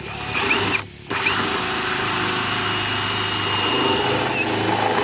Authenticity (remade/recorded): recorded